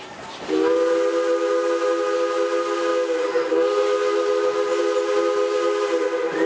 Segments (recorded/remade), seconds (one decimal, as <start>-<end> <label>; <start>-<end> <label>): 0.0-6.5 recorded